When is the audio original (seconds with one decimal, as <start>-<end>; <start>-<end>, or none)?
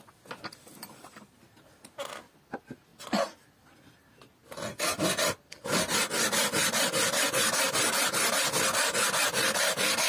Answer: 0.0-10.1